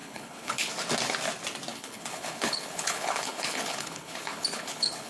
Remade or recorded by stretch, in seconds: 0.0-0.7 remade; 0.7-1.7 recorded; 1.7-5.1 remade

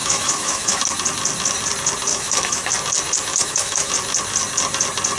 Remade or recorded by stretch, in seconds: 0.0-0.8 remade; 0.8-2.1 recorded; 2.1-2.7 remade; 2.7-3.3 recorded; 3.3-3.9 remade; 3.9-5.2 recorded